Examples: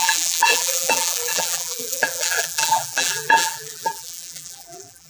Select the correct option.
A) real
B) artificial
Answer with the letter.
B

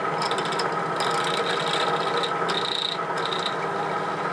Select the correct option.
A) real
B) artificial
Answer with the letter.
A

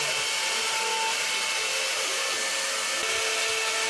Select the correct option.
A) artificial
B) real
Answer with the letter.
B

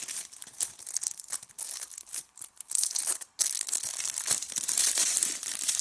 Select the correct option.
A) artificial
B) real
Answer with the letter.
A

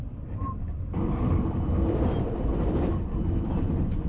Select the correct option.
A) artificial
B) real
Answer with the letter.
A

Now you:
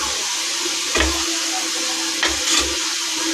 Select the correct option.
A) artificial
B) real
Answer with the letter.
B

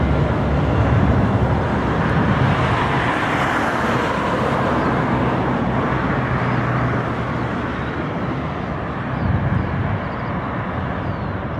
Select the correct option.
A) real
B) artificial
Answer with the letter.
A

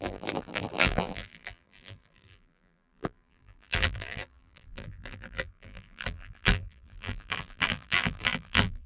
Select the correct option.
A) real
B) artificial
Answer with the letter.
B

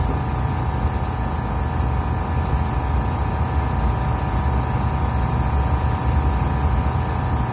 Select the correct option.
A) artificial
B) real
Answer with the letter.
B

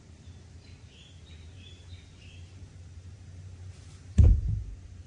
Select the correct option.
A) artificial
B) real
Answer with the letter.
A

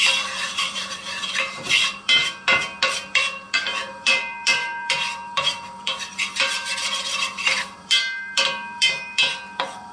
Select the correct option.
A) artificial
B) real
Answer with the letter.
A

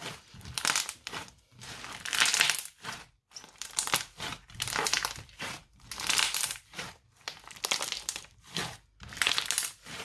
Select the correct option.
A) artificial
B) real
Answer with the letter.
A